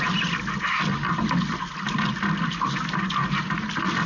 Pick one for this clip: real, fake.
real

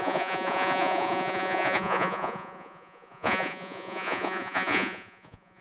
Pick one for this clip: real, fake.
fake